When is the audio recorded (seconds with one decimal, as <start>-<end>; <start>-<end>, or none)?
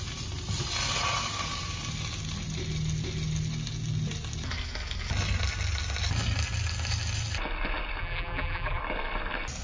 0.0-8.0; 8.8-9.6